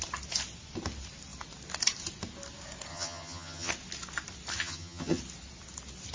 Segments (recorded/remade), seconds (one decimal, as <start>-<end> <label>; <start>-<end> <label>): 0.0-2.9 recorded; 2.9-3.7 remade; 3.7-4.6 recorded; 4.6-5.2 remade; 5.2-6.1 recorded